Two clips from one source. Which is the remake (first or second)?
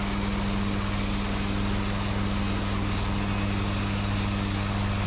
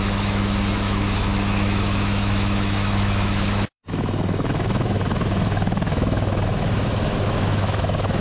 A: second